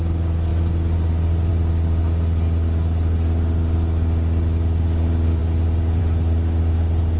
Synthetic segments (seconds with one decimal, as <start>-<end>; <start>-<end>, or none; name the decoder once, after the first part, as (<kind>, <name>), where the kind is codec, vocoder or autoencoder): none